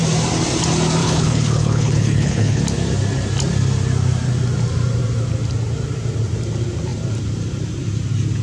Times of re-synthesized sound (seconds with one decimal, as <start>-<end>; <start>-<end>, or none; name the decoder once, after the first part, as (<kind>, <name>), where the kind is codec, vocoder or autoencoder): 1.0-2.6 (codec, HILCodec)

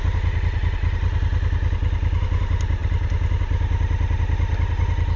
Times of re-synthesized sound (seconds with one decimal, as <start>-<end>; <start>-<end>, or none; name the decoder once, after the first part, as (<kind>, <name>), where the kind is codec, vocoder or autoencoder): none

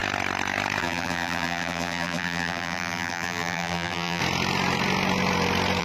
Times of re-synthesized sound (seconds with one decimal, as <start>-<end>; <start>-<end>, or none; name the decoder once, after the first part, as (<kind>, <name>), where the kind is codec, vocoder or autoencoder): 0.8-4.2 (vocoder, BigVGAN v2)

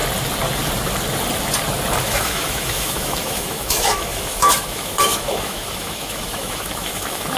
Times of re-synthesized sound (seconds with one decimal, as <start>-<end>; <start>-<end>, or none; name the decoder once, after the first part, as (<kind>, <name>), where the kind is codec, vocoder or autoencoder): 2.0-7.4 (autoencoder, DAC-VAE)

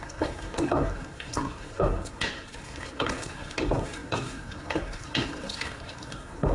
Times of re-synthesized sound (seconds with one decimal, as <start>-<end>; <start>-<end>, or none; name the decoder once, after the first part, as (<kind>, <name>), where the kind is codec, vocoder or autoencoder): 0.0-6.5 (codec, SNAC)

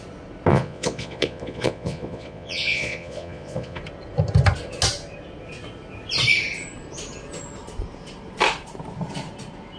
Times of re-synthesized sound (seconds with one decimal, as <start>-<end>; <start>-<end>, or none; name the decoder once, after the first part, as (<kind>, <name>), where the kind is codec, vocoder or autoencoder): 0.5-3.8 (vocoder, Vocos)